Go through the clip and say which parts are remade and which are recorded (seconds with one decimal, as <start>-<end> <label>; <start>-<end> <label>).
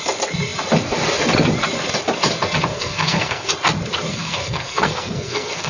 0.0-2.7 recorded; 2.7-3.5 remade; 3.5-4.1 recorded; 4.1-5.7 remade